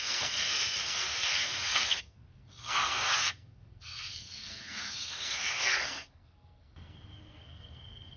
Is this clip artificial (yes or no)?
yes